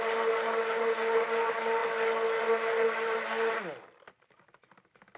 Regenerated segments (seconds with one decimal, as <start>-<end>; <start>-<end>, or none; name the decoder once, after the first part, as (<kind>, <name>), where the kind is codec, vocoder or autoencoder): none